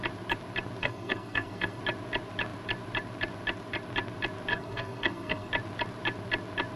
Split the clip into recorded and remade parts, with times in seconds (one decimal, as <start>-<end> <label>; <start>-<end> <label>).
0.0-0.8 recorded; 0.8-1.8 remade; 1.8-4.5 recorded; 4.5-5.5 remade; 5.5-6.8 recorded